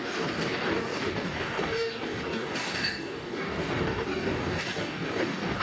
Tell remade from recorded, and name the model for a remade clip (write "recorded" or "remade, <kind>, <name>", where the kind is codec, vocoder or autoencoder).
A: remade, codec, DAC